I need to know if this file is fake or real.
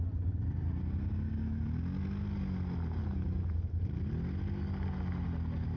real